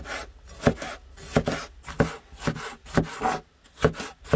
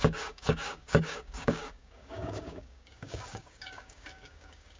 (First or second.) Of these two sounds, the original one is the first